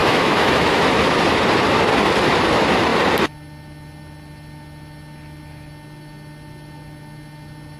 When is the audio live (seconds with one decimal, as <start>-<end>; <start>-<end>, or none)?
0.8-7.8